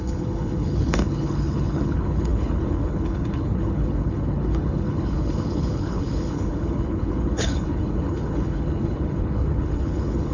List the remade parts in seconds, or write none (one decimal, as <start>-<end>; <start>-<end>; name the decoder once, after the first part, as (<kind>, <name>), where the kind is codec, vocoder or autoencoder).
0.0-10.3 (codec, HILCodec)